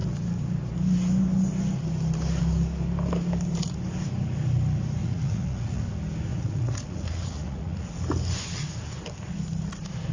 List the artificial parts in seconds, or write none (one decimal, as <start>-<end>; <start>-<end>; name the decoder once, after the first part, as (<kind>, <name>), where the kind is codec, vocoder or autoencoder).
5.0-5.8 (vocoder, Vocos); 6.3-7.9